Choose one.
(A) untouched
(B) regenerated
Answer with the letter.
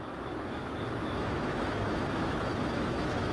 B